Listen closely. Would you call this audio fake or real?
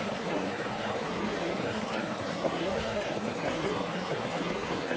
fake